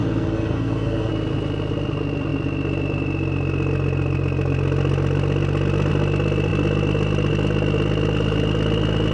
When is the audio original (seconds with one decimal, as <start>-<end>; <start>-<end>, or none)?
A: 1.1-9.1